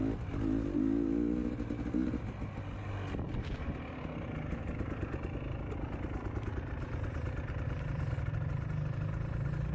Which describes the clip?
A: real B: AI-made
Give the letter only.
A